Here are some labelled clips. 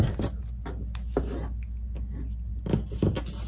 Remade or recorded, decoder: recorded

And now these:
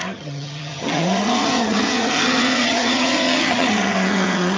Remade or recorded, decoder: remade, vocoder, HiFi-GAN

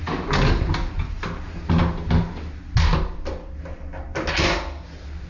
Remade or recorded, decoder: recorded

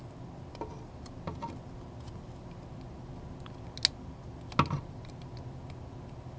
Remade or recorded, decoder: recorded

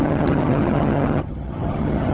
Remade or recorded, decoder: remade, vocoder, HiFi-GAN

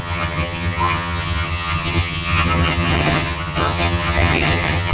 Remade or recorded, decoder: remade, vocoder, HiFi-GAN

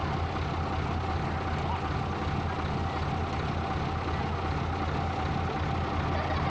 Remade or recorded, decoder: recorded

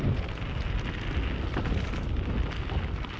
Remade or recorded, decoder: recorded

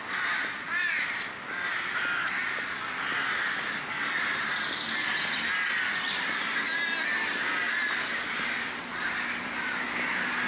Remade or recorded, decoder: recorded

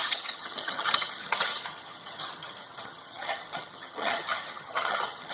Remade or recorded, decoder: remade, vocoder, HiFi-GAN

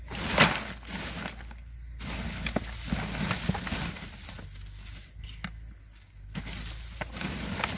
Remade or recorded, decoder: recorded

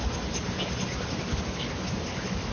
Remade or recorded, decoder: recorded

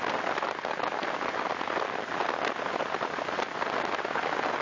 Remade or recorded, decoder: recorded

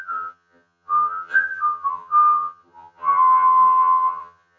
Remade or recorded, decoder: remade, vocoder, HiFi-GAN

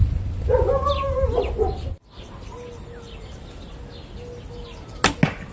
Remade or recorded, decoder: recorded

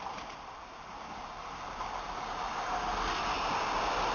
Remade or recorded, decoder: recorded